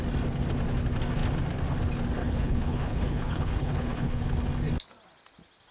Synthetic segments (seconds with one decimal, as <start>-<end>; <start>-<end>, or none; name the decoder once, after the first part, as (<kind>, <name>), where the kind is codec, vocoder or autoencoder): 2.2-4.2 (codec, HILCodec)